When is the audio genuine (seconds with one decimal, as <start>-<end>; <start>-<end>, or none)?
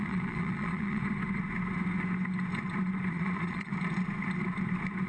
1.0-3.1; 3.7-5.1